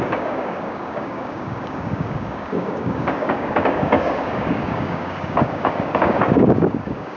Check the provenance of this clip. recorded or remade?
remade